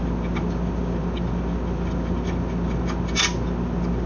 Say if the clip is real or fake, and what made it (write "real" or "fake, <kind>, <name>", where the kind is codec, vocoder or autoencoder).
real